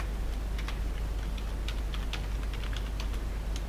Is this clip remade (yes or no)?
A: no